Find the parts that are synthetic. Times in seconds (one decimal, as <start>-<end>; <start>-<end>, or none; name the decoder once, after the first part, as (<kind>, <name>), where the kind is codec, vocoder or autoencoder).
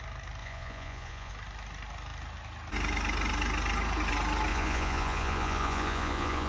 0.4-1.3 (vocoder, Vocos); 4.5-6.5